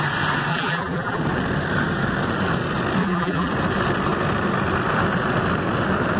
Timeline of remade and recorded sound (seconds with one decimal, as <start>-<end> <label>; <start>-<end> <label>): 0.0-0.5 recorded; 0.5-1.2 remade; 1.2-3.0 recorded; 3.0-3.5 remade; 3.5-6.2 recorded